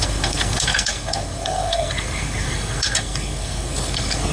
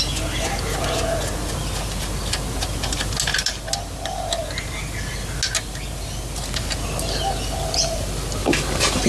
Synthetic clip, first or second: first